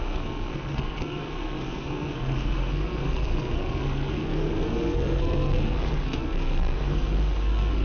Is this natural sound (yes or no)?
no